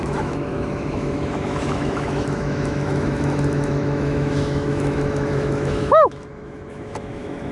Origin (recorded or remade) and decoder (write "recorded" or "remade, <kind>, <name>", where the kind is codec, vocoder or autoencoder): remade, autoencoder, DAC-VAE